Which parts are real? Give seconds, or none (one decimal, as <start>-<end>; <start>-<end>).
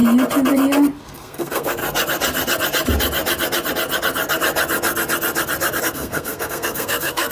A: 0.0-1.0; 1.8-5.8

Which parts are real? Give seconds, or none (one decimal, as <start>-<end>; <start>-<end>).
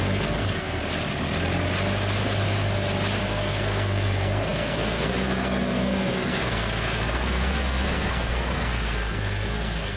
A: 0.8-3.2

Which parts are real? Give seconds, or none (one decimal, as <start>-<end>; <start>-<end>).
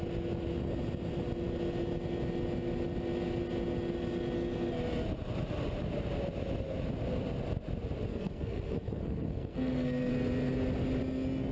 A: 0.0-8.1; 10.1-11.5